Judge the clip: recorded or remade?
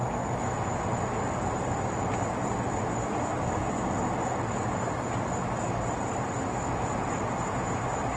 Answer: recorded